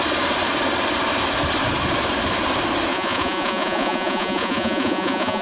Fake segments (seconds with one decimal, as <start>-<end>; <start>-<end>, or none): 2.9-5.4